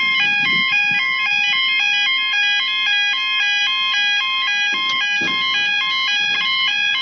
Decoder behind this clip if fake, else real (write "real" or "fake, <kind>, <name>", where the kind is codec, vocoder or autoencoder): real